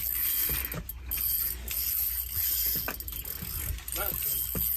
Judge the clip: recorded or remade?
recorded